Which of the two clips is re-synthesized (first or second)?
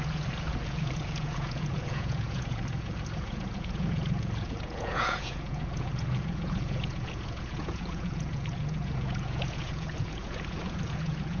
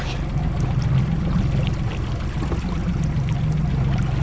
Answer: first